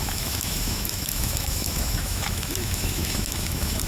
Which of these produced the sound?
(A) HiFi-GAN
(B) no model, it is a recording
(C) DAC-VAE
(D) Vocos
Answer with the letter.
C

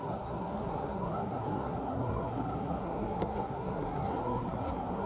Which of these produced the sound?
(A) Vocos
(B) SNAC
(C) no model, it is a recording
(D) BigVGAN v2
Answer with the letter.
B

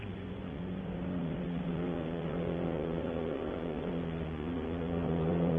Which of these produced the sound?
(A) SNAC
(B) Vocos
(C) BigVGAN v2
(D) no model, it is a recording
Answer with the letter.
B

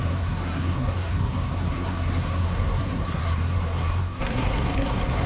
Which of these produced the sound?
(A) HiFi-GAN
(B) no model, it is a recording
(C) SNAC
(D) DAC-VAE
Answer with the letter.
C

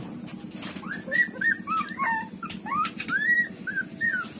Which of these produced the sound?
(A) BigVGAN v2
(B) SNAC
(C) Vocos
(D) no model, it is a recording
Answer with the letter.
D